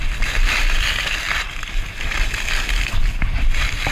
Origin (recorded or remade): recorded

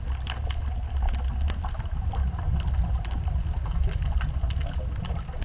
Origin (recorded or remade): recorded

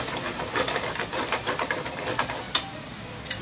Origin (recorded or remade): remade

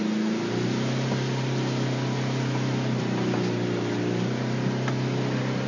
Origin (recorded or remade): recorded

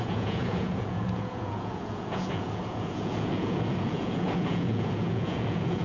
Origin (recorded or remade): remade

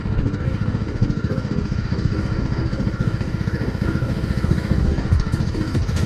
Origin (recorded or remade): remade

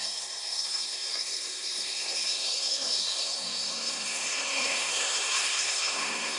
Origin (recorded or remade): remade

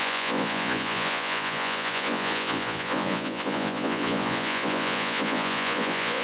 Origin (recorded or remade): remade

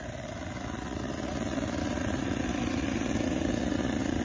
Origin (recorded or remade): remade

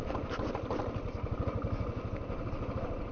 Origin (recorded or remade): recorded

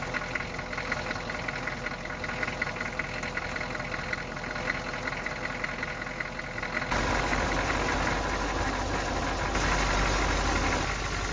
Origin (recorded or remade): recorded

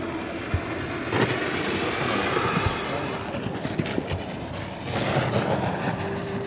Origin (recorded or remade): recorded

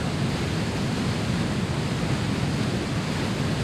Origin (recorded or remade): recorded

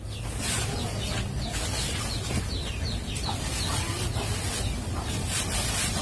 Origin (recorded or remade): recorded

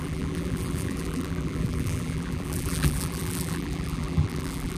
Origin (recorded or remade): remade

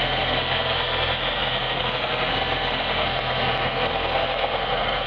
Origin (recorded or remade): remade